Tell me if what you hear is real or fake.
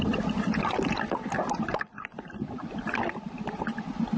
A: fake